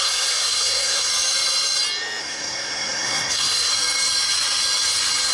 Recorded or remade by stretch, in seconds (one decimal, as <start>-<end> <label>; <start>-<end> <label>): 0.0-1.1 remade; 1.1-2.2 recorded; 2.2-3.7 remade; 3.7-5.3 recorded